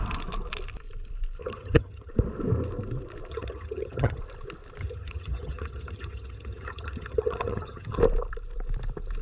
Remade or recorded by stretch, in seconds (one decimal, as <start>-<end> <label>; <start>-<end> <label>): 0.0-1.4 recorded; 1.4-2.1 remade; 2.1-3.3 recorded; 3.3-4.2 remade; 4.2-4.8 recorded; 4.8-8.0 remade; 8.0-9.2 recorded